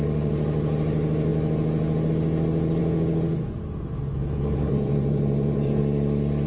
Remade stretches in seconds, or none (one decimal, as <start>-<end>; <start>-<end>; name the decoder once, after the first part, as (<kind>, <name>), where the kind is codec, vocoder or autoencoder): 2.8-3.6 (vocoder, Vocos); 4.2-5.8